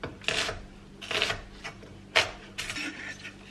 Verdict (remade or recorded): recorded